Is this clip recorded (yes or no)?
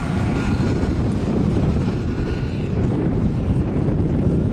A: no